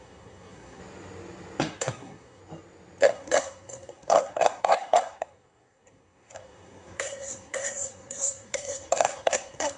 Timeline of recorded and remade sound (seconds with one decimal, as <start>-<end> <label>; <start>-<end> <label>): 0.0-0.8 remade; 0.8-1.6 recorded; 1.6-2.4 remade; 2.4-3.0 recorded; 3.0-9.8 remade